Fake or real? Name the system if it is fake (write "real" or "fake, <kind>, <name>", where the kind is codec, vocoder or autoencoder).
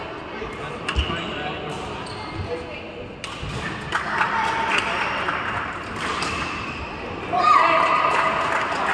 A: real